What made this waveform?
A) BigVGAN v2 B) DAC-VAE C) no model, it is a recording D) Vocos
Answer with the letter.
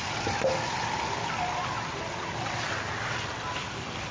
C